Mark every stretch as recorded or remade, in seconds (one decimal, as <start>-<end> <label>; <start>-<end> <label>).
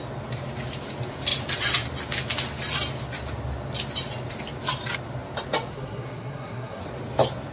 0.0-5.7 recorded; 5.7-6.8 remade; 6.8-7.5 recorded